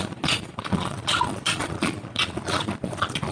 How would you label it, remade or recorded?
remade